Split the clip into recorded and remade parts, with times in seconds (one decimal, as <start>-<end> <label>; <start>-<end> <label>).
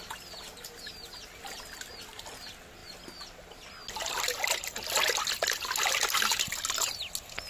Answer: 0.0-7.5 recorded